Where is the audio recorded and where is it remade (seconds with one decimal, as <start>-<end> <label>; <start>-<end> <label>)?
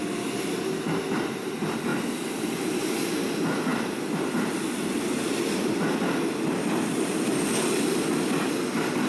0.0-0.6 remade; 0.6-1.9 recorded; 1.9-2.8 remade; 2.8-3.7 recorded; 3.7-8.0 remade; 8.0-9.1 recorded